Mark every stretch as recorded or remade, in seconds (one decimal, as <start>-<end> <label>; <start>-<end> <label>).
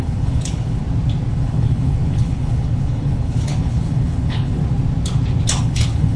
0.0-0.8 remade; 0.8-1.3 recorded; 1.3-4.6 remade; 4.6-5.6 recorded; 5.6-6.2 remade